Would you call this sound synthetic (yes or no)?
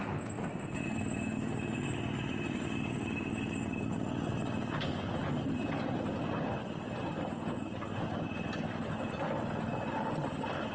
no